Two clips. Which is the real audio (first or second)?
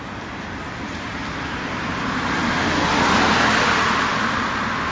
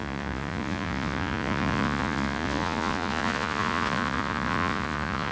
first